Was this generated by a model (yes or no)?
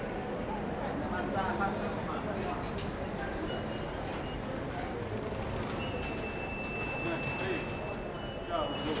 no